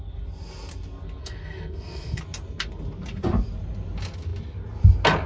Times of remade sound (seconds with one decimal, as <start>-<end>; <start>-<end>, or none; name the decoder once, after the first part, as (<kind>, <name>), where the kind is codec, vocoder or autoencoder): 1.2-2.2 (codec, SNAC)